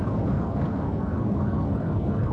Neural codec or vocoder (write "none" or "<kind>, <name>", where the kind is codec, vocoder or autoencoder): codec, SNAC